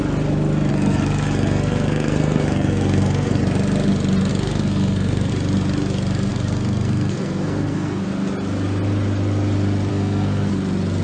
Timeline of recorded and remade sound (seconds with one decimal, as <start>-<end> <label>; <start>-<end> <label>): 0.0-0.7 recorded; 0.7-3.4 remade; 3.4-4.3 recorded; 4.3-5.3 remade; 5.3-6.3 recorded; 6.3-8.1 remade; 8.1-9.9 recorded; 9.9-10.5 remade; 10.5-11.0 recorded